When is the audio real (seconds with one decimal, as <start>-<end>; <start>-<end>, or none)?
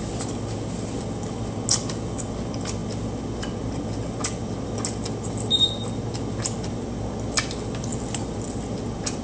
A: 0.0-9.2